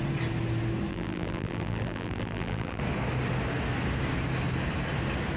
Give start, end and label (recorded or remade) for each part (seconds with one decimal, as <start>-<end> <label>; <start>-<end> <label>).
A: 0.0-0.9 recorded; 0.9-2.8 remade; 2.8-5.4 recorded